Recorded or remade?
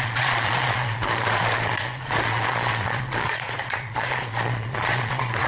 remade